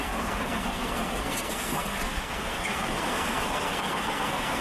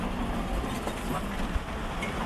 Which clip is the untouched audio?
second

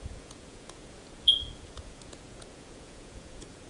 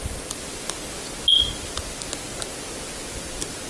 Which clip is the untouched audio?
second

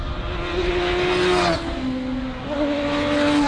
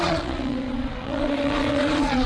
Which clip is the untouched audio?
first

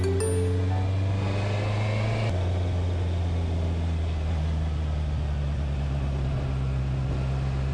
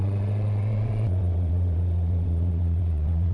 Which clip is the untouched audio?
first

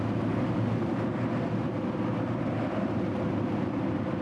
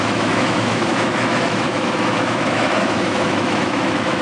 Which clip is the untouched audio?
first